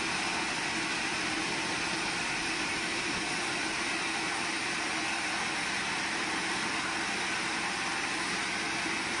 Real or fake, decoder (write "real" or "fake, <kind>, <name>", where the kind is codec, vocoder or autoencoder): real